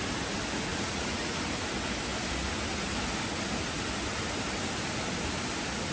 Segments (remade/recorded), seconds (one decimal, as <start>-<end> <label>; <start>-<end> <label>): 0.0-0.7 recorded; 0.7-1.4 remade; 1.4-5.9 recorded